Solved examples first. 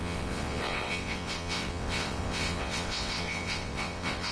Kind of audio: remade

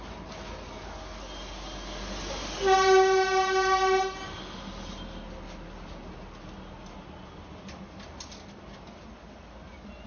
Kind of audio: recorded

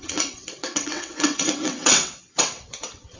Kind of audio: remade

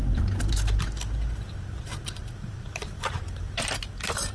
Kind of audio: recorded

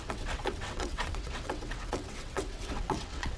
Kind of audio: remade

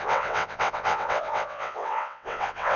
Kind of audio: remade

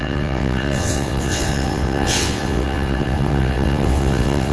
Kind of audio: remade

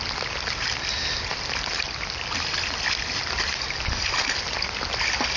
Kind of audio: recorded